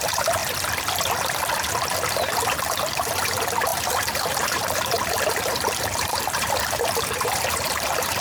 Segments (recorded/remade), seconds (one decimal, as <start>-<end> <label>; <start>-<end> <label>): 0.0-0.4 remade; 0.4-2.6 recorded; 2.6-8.2 remade